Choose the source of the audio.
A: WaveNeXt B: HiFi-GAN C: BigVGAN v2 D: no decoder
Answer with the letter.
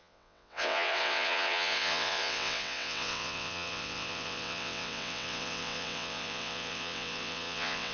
A